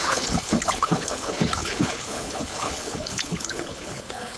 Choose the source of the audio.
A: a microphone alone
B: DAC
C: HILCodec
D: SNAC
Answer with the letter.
C